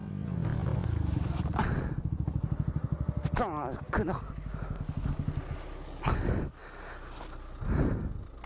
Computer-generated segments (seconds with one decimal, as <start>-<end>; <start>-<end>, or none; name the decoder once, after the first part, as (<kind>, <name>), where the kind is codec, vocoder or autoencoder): none